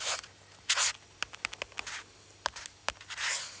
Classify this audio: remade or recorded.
recorded